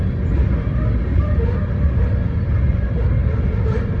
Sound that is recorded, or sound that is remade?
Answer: recorded